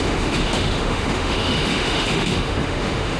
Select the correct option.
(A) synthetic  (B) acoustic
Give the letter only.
A